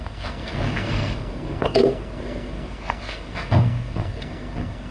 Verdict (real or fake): fake